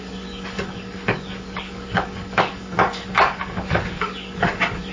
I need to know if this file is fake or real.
fake